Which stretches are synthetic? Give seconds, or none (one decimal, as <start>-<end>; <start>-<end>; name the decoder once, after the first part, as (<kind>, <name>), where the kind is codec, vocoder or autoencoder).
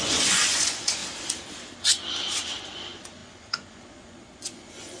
0.0-1.0 (vocoder, Vocos); 2.6-5.0